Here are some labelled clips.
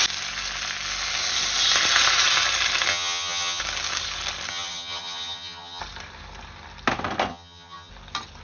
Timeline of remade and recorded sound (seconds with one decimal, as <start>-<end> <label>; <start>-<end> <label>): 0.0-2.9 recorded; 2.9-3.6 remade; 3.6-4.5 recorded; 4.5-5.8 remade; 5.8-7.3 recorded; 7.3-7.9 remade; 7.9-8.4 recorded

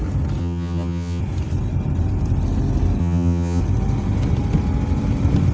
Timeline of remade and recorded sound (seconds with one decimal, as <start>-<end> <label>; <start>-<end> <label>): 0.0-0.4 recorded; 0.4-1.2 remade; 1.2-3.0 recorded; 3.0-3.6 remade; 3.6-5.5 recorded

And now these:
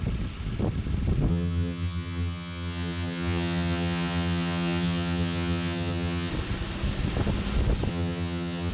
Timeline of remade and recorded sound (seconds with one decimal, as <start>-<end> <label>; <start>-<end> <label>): 0.0-1.3 recorded; 1.3-6.3 remade; 6.3-7.9 recorded; 7.9-8.7 remade